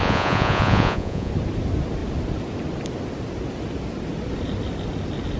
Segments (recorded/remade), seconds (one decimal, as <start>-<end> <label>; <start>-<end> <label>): 0.0-1.3 remade; 1.3-5.4 recorded